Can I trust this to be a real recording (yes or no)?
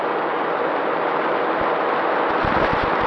yes